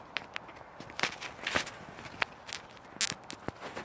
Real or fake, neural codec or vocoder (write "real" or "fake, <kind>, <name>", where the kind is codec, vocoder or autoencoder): real